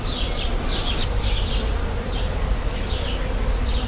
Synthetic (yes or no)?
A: no